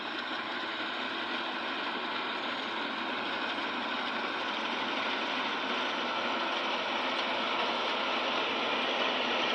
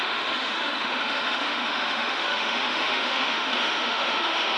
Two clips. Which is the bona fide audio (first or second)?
first